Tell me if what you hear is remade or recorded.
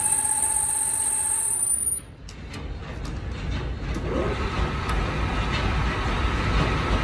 recorded